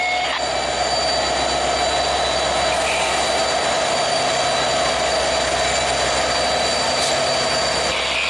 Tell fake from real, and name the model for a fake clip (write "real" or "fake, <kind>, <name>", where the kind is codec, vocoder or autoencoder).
real